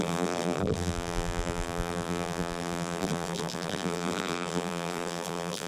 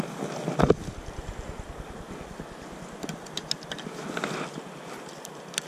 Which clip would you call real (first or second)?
second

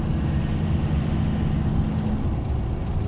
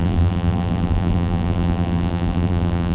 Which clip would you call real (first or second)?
first